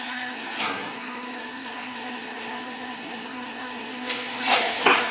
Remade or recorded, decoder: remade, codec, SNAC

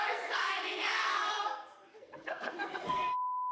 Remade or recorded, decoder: remade, codec, SNAC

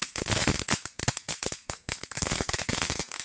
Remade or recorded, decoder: remade, codec, SNAC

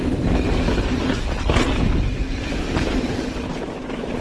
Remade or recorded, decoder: recorded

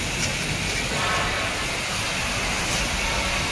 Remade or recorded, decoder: recorded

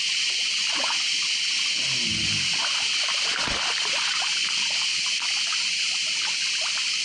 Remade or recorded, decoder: recorded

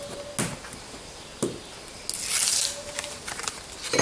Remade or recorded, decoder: recorded